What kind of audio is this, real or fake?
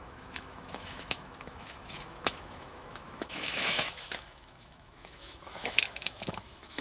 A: fake